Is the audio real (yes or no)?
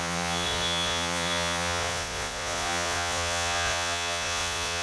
no